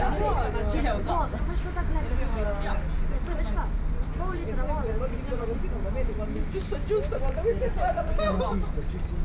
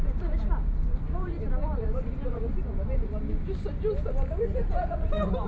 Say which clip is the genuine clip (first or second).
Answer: first